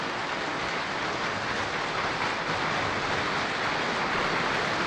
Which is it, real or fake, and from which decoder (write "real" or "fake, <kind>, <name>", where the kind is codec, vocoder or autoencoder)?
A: real